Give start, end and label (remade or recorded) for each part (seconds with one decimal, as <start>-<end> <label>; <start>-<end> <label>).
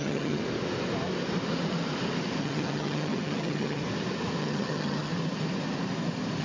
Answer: 0.0-0.4 remade; 0.4-2.4 recorded; 2.4-3.8 remade; 3.8-4.4 recorded; 4.4-5.1 remade; 5.1-6.4 recorded